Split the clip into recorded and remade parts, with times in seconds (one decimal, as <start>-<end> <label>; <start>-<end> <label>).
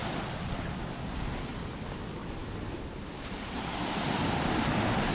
0.0-5.1 recorded